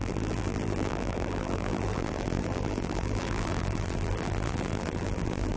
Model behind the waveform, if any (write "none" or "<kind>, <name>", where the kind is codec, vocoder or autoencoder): vocoder, BigVGAN v2